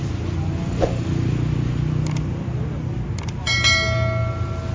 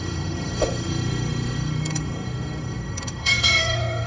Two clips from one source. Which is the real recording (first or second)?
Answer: first